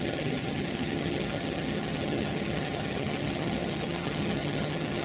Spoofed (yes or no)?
yes